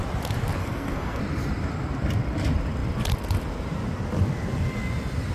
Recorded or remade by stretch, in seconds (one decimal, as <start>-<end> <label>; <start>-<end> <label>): 0.0-0.6 recorded; 0.6-1.2 remade; 1.2-5.3 recorded